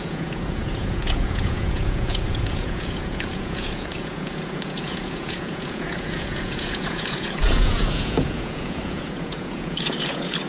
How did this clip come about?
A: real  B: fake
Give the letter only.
B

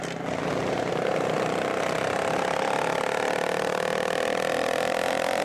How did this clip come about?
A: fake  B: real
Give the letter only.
B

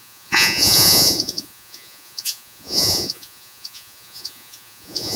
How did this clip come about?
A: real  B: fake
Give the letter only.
B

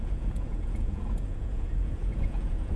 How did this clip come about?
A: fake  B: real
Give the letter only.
A